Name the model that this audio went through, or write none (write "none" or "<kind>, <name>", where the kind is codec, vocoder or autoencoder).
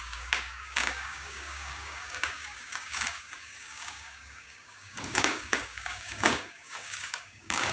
codec, DAC